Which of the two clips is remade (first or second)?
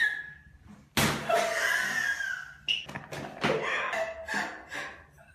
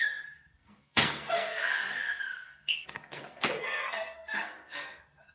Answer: second